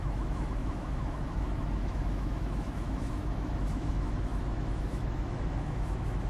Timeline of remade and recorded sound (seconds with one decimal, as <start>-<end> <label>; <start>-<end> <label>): 0.0-6.3 remade